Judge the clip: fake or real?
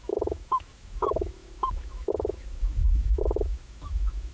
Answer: fake